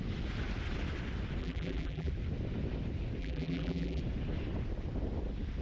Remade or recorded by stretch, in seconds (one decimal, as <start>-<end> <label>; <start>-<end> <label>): 0.0-1.4 recorded; 1.4-2.1 remade; 2.1-3.2 recorded; 3.2-4.0 remade; 4.0-5.6 recorded

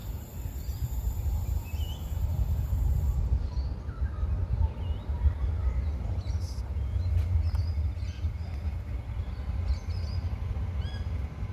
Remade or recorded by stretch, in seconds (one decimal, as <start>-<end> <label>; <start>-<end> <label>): 0.0-11.5 recorded

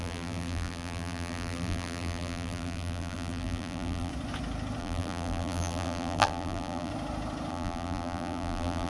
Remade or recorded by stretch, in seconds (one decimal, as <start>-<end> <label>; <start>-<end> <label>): 0.0-4.1 remade; 4.1-4.8 recorded; 4.8-6.9 remade; 6.9-7.5 recorded; 7.5-8.9 remade

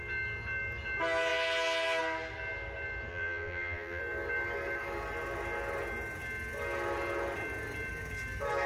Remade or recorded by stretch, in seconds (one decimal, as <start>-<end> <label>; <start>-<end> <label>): 0.0-3.1 recorded; 3.1-4.0 remade; 4.0-8.7 recorded

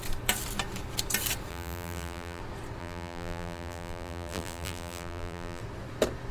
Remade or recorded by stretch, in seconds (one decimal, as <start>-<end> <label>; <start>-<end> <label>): 0.0-1.5 recorded; 1.5-2.4 remade; 2.4-2.8 recorded; 2.8-5.6 remade; 5.6-6.3 recorded

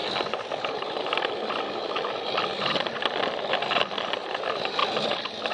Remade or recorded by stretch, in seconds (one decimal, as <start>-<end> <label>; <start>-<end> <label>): 0.0-1.5 recorded; 1.5-4.8 remade; 4.8-5.5 recorded